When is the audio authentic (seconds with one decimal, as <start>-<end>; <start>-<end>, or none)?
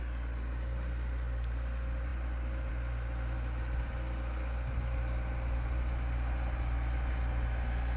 0.0-8.0